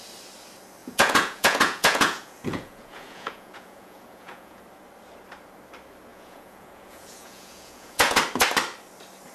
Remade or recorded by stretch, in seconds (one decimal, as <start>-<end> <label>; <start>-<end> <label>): 0.0-0.8 recorded; 0.8-4.6 remade; 4.6-6.1 recorded; 6.1-8.2 remade; 8.2-9.3 recorded